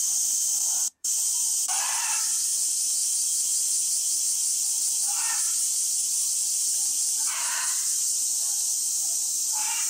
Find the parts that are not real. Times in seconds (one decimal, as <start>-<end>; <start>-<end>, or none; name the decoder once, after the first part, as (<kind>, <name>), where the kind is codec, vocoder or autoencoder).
0.0-3.0 (vocoder, BigVGAN v2); 4.3-9.9